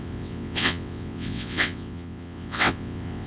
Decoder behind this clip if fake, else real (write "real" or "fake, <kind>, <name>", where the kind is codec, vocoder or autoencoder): fake, vocoder, WaveNeXt